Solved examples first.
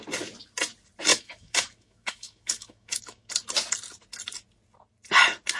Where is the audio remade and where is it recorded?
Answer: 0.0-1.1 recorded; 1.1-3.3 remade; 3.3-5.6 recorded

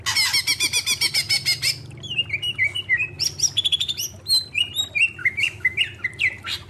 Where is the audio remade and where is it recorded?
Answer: 0.0-5.2 recorded; 5.2-5.8 remade; 5.8-6.7 recorded

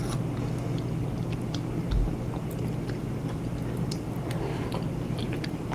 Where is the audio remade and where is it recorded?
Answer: 0.0-5.7 recorded

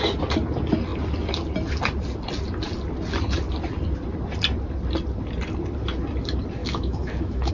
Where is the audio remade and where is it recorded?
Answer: 0.0-6.6 recorded; 6.6-7.5 remade